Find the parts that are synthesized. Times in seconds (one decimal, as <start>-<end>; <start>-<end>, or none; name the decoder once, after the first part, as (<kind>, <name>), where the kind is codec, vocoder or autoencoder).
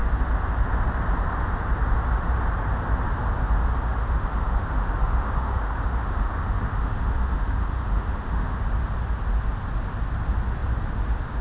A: 4.0-8.6 (autoencoder, DAC-VAE)